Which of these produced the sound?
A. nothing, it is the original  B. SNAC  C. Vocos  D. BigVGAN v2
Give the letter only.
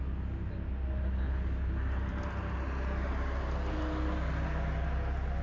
A